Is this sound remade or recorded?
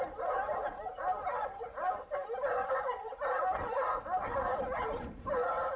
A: recorded